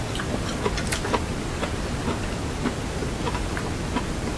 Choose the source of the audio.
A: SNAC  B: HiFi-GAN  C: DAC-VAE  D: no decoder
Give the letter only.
D